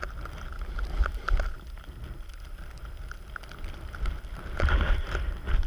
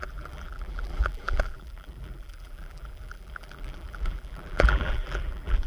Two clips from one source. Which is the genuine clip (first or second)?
first